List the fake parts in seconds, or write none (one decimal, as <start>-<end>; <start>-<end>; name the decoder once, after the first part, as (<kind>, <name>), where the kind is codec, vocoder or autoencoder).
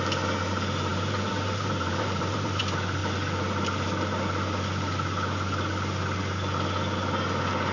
0.9-2.6 (vocoder, BigVGAN v2)